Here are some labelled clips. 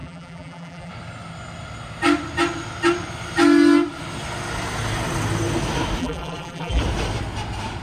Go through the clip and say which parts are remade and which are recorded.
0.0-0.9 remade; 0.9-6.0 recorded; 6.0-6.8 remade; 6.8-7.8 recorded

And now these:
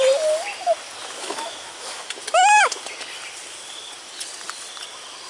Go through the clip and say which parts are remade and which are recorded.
0.0-1.0 recorded; 1.0-2.1 remade; 2.1-5.3 recorded